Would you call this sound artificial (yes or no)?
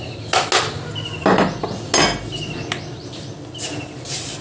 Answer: no